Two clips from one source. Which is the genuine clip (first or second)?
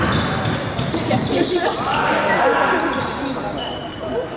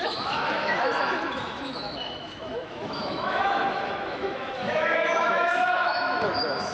first